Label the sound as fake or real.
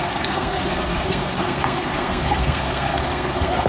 fake